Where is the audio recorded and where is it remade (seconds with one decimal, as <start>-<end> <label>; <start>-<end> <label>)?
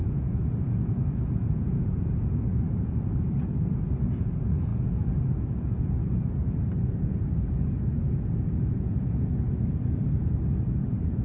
0.0-11.2 remade